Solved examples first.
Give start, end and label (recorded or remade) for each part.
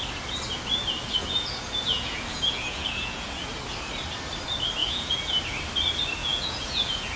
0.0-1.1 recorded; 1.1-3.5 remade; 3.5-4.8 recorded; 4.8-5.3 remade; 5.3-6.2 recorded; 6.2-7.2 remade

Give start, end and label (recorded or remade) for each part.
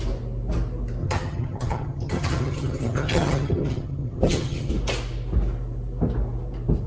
0.0-1.0 recorded; 1.0-4.7 remade; 4.7-6.9 recorded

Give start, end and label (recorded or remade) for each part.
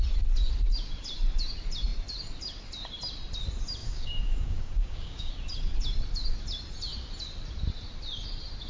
0.0-3.8 recorded; 3.8-5.3 remade; 5.3-8.7 recorded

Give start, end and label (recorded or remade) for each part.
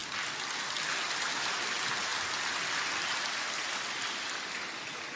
0.0-5.2 recorded